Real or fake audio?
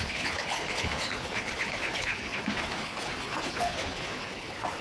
fake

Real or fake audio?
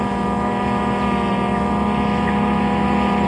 real